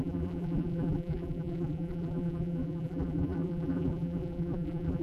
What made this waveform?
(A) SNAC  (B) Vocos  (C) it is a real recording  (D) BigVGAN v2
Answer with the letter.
D